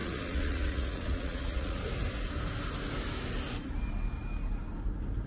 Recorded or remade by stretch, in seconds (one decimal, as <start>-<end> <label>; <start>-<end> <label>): 0.0-1.8 remade; 1.8-5.3 recorded